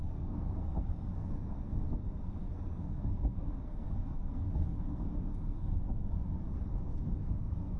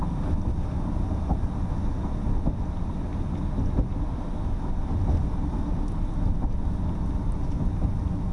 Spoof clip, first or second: first